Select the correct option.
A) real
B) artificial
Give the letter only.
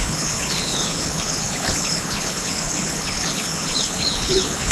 B